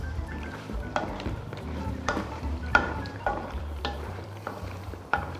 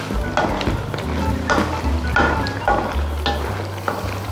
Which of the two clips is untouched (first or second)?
second